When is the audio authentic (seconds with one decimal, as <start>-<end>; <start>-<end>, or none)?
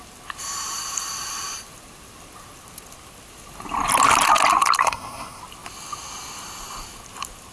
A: 0.0-4.8; 5.4-7.5